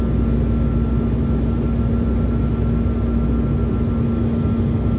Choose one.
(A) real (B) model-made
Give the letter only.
A